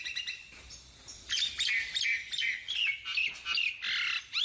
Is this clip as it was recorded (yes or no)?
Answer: yes